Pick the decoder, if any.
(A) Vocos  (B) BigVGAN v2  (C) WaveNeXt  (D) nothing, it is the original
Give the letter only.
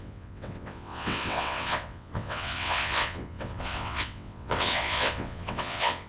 C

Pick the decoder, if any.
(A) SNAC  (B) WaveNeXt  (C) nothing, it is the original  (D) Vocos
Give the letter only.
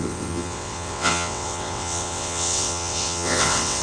B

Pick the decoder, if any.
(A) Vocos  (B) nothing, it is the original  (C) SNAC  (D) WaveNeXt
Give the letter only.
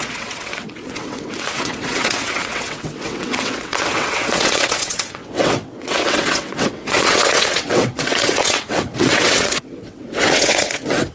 D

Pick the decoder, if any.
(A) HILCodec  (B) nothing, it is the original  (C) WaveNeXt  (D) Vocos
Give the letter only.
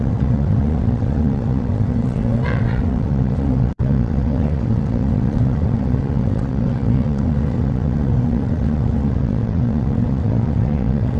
C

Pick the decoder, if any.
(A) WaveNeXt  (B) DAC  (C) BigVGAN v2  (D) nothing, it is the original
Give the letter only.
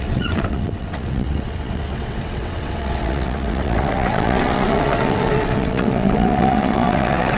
A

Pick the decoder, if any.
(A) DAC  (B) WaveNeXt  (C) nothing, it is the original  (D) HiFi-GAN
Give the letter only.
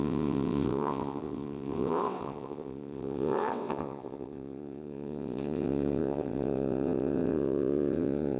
B